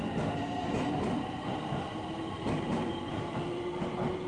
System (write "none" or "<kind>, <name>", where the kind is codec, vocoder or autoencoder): none